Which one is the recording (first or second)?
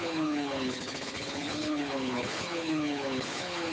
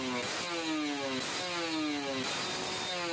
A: second